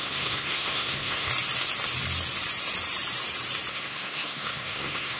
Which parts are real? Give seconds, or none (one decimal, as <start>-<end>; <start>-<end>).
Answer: 1.3-3.7